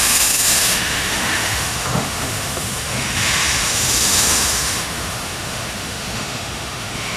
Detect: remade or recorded remade